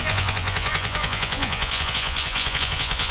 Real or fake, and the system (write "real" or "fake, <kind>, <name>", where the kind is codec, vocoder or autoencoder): fake, vocoder, Vocos